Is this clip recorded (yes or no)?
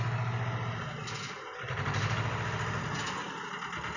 yes